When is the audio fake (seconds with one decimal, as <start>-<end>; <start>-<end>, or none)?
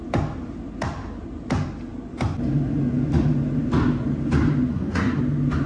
4.7-5.2